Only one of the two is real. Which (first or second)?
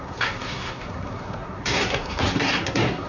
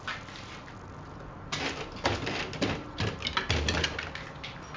second